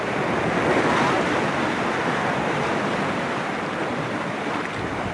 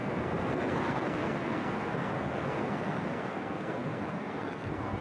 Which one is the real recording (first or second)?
first